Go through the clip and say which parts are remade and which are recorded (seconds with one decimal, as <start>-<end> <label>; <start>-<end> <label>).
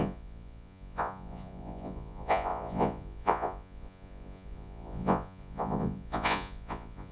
0.0-7.1 remade